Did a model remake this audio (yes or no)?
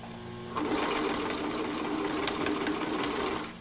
no